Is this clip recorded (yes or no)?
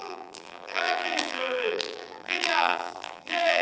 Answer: no